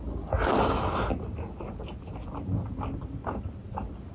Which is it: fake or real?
real